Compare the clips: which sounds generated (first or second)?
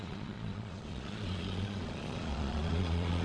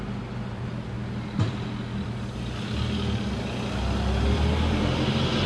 first